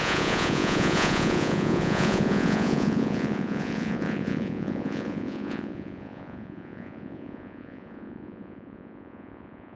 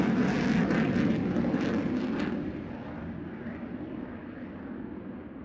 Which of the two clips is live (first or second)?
second